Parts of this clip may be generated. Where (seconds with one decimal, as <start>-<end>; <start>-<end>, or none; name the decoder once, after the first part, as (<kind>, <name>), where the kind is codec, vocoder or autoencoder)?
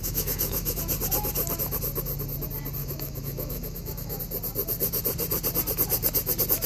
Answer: 0.0-0.8 (autoencoder, DAC-VAE); 2.8-4.2